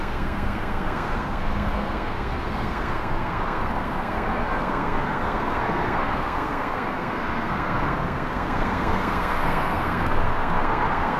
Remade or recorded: remade